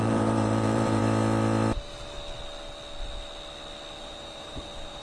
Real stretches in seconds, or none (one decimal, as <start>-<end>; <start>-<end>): 1.0-4.0